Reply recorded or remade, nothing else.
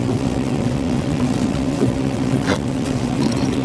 remade